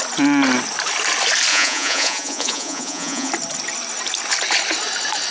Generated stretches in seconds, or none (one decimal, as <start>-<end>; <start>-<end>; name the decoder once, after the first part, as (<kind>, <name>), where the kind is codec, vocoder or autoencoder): 1.5-3.3 (vocoder, Vocos)